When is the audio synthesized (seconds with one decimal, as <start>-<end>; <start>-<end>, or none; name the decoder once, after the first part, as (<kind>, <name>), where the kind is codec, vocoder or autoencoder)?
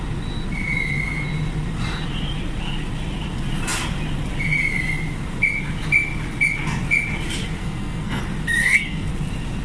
7.6-8.2 (codec, SNAC); 8.6-9.1